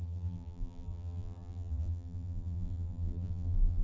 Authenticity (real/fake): fake